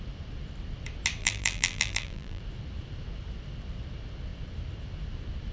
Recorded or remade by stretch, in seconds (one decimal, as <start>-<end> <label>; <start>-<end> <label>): 0.0-1.2 recorded; 1.2-2.4 remade; 2.4-5.5 recorded